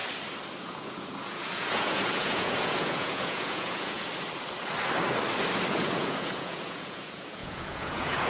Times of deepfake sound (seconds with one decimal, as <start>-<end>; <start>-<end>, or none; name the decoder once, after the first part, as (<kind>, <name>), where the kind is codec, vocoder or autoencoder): 0.6-4.1 (vocoder, Vocos); 5.7-8.3